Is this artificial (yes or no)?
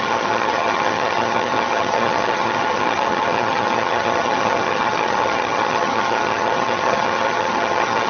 yes